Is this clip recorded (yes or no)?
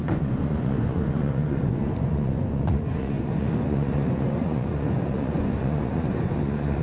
no